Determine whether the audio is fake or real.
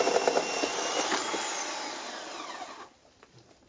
real